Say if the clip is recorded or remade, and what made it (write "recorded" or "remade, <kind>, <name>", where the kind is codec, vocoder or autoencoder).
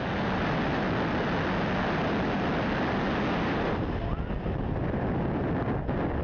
recorded